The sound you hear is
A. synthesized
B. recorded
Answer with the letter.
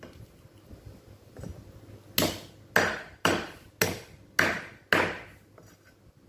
B